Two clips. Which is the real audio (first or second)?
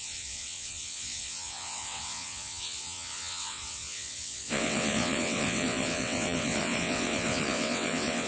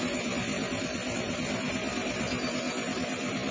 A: second